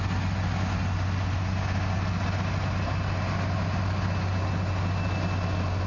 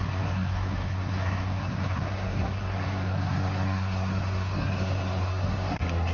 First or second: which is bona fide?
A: first